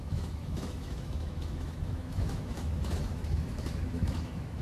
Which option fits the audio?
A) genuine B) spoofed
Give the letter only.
B